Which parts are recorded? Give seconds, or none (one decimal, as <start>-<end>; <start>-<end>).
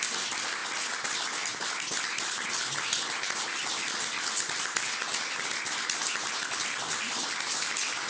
0.0-8.1